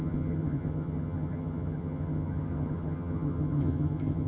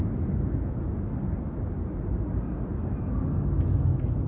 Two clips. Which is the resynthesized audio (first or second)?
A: first